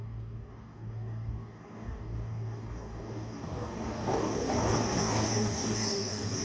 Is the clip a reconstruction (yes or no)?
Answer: yes